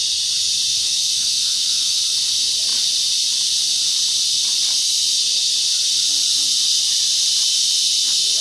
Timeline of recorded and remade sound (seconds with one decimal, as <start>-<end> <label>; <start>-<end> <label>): 0.0-0.7 recorded; 0.7-2.0 remade; 2.0-8.4 recorded

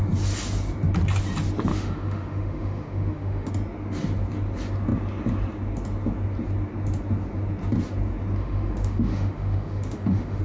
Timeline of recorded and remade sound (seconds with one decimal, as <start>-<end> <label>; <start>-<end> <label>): 0.0-1.7 recorded; 1.7-3.5 remade; 3.5-8.4 recorded; 8.4-10.4 remade